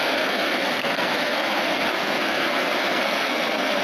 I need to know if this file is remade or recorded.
remade